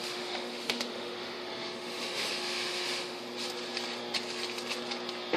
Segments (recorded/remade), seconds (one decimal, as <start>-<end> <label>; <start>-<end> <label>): 0.0-3.2 remade; 3.2-5.4 recorded